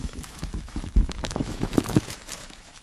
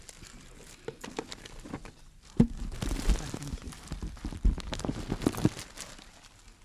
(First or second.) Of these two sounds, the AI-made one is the first